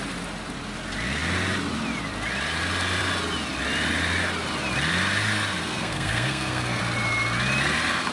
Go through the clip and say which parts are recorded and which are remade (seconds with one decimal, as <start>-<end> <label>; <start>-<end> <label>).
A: 0.0-5.6 recorded; 5.6-6.8 remade; 6.8-8.1 recorded